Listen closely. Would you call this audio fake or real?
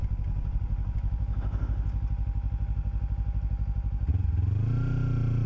real